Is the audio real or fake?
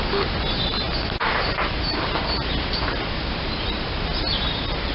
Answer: real